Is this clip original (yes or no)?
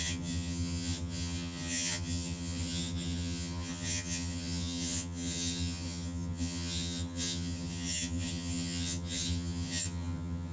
no